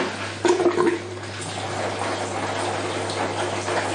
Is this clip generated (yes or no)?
no